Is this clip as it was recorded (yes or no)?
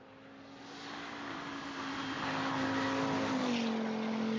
yes